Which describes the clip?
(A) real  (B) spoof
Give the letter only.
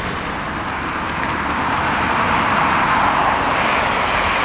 A